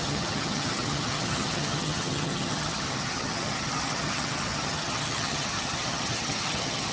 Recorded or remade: remade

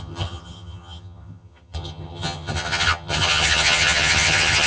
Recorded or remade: remade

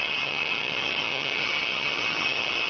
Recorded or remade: remade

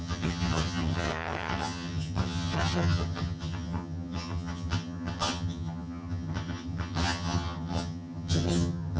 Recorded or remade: remade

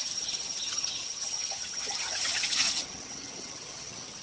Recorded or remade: remade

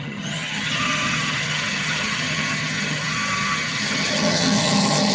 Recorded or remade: remade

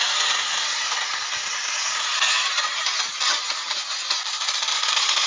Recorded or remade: recorded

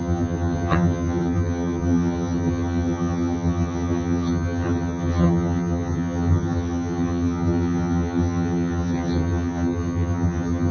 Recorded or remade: remade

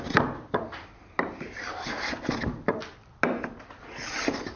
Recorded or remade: recorded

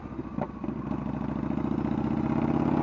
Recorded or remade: recorded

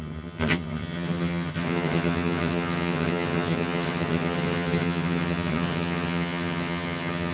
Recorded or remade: remade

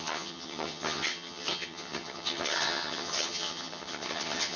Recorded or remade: remade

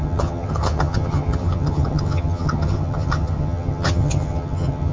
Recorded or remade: remade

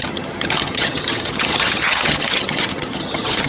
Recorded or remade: remade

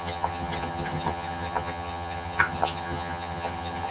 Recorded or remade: remade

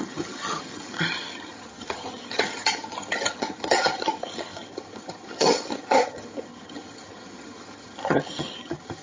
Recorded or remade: remade